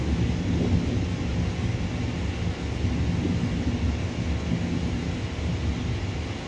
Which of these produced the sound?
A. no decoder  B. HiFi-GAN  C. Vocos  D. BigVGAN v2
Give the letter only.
A